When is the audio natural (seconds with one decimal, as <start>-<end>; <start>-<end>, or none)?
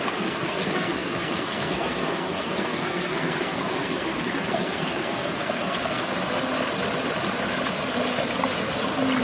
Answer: 6.1-9.2